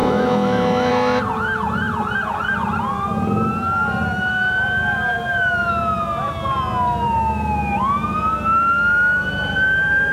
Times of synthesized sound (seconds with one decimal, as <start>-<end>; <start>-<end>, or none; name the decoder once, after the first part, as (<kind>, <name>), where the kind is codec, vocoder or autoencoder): none